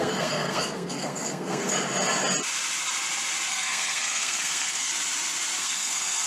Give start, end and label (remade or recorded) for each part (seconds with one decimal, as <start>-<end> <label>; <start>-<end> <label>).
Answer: 0.0-1.7 remade; 1.7-3.5 recorded; 3.5-4.9 remade; 4.9-5.6 recorded; 5.6-6.3 remade